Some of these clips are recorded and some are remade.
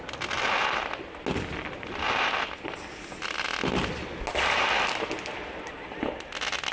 recorded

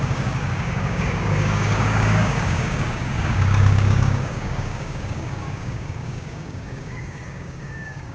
remade